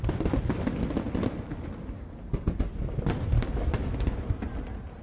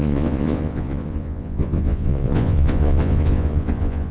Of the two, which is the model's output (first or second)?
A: second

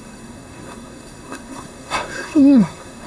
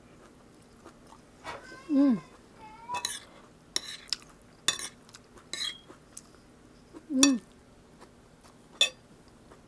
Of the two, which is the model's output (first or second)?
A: first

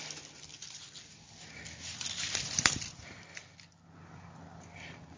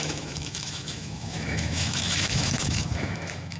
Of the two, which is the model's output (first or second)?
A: second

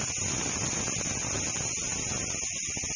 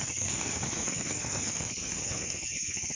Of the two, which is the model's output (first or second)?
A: second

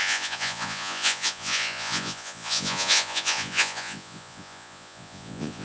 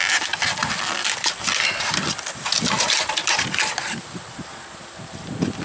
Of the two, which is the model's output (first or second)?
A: first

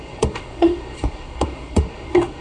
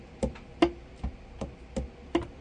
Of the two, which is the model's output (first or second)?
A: first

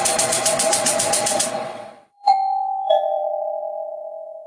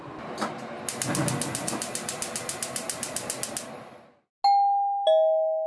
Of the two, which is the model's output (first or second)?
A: first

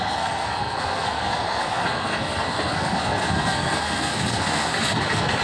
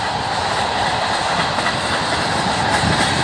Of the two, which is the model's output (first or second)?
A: first